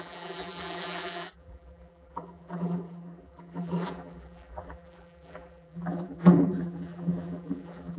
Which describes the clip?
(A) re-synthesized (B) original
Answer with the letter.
A